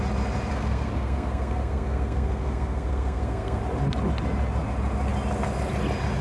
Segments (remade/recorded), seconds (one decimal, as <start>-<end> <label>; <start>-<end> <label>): 0.0-0.5 recorded; 0.5-3.6 remade; 3.6-6.2 recorded